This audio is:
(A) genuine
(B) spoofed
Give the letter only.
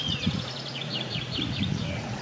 B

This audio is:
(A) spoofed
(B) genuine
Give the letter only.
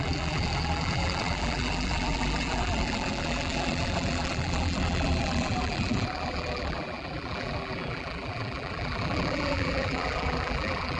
A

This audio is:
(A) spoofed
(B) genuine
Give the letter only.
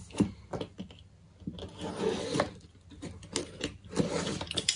B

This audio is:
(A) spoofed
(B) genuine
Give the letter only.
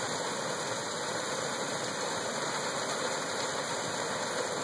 B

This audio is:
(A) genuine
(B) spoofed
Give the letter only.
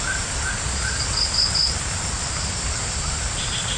A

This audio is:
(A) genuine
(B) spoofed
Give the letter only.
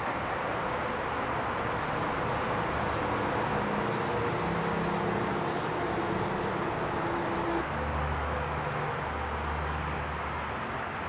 A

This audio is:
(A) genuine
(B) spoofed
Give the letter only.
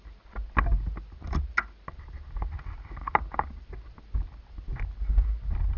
A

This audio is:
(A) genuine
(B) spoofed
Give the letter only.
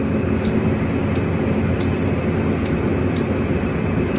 A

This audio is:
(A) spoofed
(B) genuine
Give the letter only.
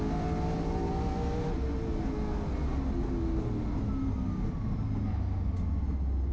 B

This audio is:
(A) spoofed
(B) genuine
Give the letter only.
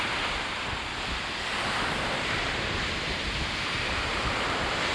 A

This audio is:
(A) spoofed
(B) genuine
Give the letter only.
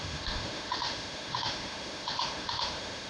A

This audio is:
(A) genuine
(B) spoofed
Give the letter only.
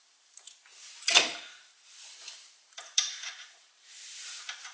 B